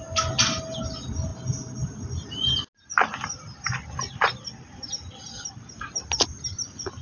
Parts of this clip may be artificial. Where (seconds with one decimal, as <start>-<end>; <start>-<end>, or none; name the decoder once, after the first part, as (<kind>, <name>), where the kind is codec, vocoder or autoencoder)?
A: none